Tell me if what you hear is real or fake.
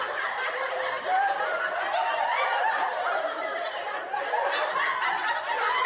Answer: real